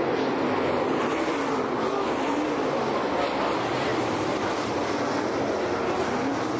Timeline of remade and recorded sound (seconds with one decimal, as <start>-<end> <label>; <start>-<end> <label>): 0.0-3.9 recorded; 3.9-5.0 remade; 5.0-6.6 recorded